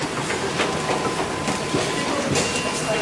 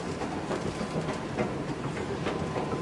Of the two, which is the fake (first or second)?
second